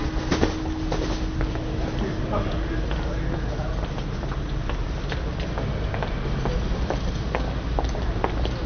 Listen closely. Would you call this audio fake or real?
real